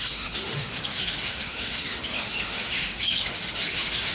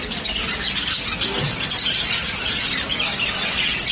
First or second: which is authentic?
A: second